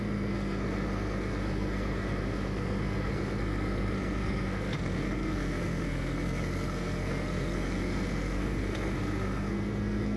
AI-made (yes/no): yes